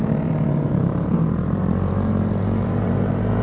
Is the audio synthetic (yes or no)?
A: yes